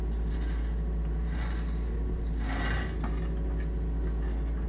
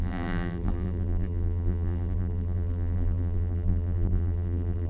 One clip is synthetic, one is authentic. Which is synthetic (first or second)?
second